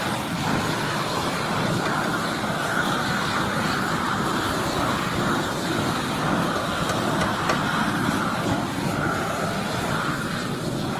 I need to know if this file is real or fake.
real